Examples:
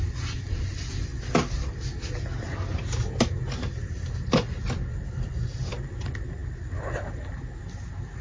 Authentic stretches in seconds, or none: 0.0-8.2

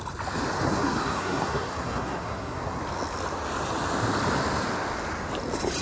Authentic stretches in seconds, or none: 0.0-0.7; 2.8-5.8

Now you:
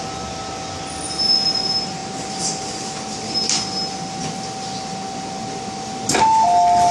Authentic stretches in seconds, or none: 0.0-6.9

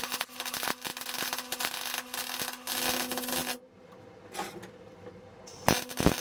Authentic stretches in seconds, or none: 0.0-6.2

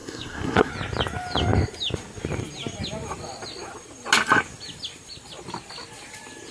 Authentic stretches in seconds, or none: 0.7-6.5

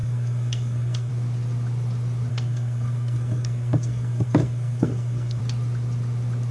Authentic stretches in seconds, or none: 1.1-2.3; 5.4-6.5